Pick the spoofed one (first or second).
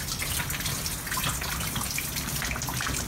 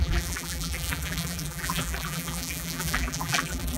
second